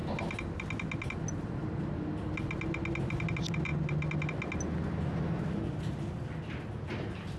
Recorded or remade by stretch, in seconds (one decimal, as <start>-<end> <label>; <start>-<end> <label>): 0.0-7.4 recorded